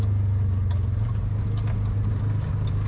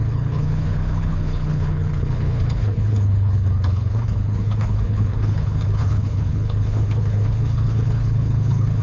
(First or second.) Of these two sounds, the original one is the first